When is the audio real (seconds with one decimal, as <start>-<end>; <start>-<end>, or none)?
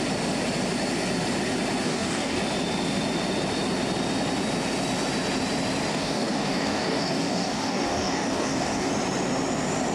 0.0-1.8; 2.4-5.9; 8.9-9.9